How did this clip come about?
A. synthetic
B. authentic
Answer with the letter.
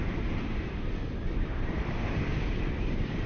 A